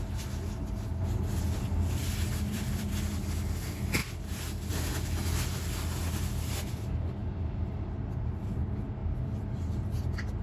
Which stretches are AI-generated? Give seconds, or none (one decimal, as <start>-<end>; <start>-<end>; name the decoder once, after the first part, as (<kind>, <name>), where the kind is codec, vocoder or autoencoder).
2.0-2.9 (vocoder, BigVGAN v2); 4.0-4.7; 7.2-8.6; 9.0-10.0